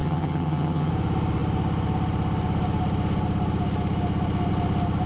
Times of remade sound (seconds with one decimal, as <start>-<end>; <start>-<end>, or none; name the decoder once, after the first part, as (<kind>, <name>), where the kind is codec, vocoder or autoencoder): 0.0-0.9 (vocoder, HiFi-GAN)